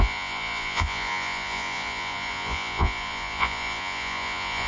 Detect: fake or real fake